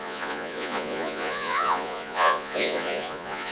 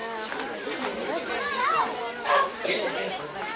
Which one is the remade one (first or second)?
first